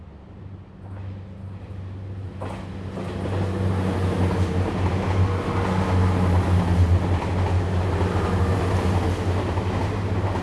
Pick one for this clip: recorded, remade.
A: recorded